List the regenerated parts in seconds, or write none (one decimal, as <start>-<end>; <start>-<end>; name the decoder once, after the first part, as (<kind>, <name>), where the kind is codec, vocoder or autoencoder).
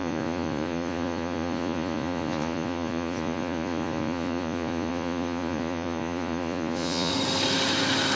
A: 0.0-7.1 (vocoder, Vocos)